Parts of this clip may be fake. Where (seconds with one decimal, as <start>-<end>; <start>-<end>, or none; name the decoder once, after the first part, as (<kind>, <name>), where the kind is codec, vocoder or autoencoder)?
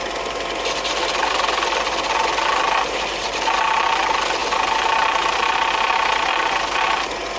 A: none